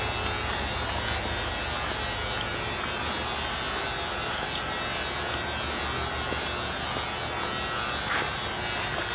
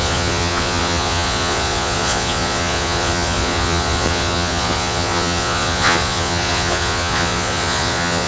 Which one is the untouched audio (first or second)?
first